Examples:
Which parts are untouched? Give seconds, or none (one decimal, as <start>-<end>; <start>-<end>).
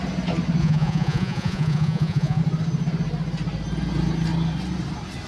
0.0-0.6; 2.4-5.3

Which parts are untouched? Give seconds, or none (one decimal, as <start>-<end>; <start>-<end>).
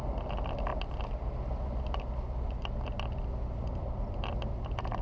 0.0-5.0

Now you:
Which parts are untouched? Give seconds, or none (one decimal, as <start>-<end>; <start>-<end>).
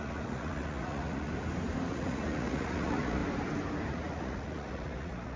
1.3-1.9; 3.2-3.9